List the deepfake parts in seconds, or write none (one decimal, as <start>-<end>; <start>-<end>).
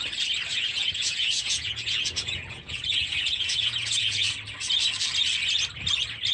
0.5-4.3